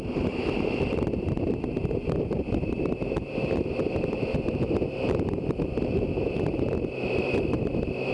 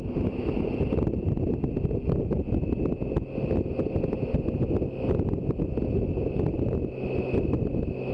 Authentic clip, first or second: second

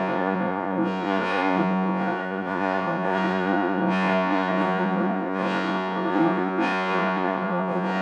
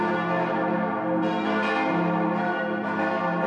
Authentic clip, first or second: second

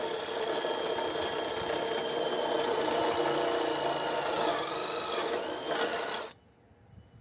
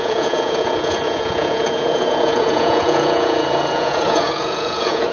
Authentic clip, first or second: first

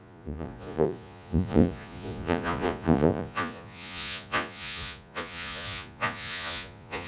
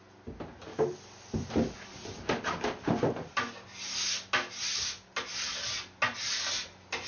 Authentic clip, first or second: second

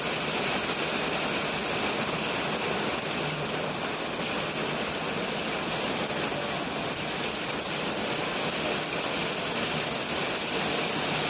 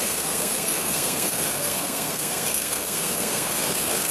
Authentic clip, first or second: first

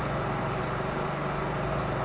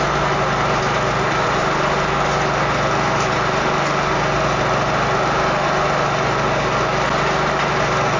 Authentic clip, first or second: second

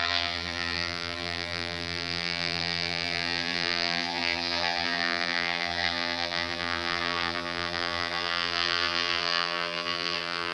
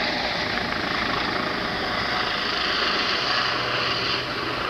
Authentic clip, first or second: second